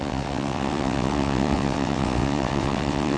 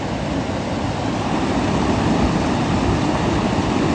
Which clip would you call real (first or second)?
second